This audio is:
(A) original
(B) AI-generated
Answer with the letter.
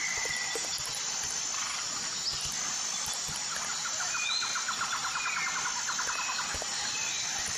A